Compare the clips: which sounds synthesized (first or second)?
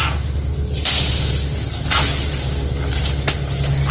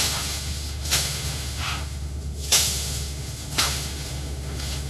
second